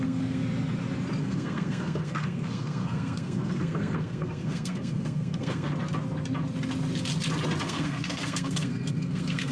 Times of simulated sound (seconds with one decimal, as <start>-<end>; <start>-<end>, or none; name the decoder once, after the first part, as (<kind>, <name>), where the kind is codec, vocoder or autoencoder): 0.0-0.4 (codec, SNAC); 1.2-5.7; 7.6-9.5